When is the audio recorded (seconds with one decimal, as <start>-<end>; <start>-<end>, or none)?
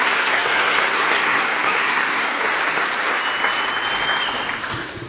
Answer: 2.4-4.6